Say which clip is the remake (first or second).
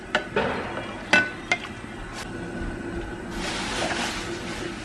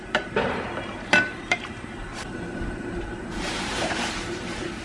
second